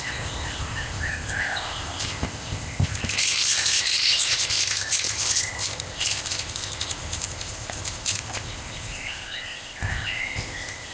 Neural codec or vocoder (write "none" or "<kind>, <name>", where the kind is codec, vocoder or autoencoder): codec, ZipCodec